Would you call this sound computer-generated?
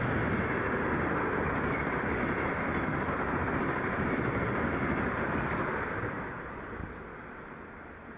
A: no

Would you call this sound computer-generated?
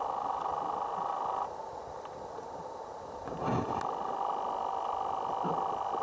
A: no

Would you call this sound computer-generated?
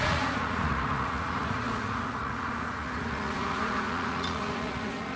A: yes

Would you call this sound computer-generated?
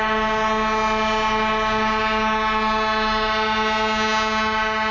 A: no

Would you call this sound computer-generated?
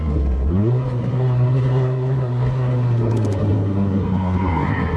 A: yes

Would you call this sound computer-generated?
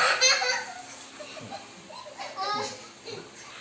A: no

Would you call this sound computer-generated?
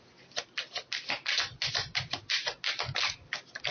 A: no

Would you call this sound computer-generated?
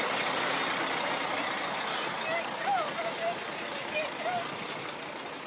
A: no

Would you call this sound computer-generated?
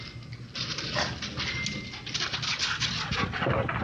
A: no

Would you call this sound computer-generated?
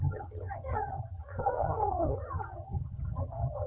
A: yes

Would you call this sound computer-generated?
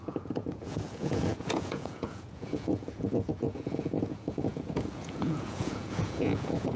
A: yes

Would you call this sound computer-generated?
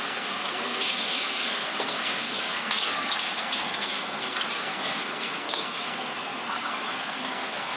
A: yes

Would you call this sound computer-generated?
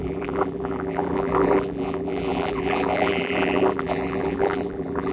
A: yes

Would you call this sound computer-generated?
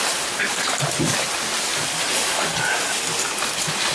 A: no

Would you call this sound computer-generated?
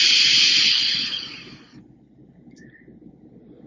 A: no